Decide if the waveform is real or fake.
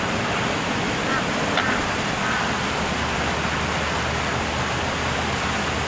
real